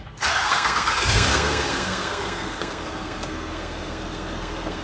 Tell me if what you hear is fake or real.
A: fake